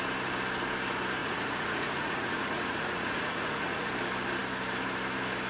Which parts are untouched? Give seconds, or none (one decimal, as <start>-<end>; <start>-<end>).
0.0-1.2; 3.9-5.5